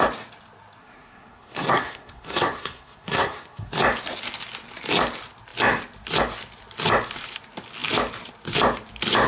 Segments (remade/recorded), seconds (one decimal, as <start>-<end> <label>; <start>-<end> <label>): 0.0-0.8 recorded; 0.8-3.7 remade; 3.7-9.3 recorded